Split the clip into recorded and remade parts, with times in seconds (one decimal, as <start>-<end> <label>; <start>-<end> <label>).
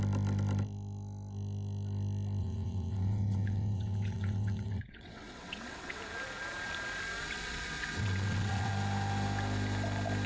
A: 0.0-2.4 recorded; 2.4-6.0 remade; 6.0-7.2 recorded; 7.2-8.7 remade; 8.7-10.3 recorded